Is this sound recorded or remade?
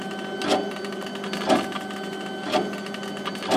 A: recorded